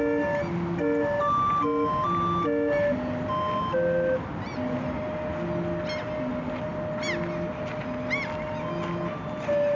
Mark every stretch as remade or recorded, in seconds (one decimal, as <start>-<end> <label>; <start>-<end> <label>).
0.0-9.8 recorded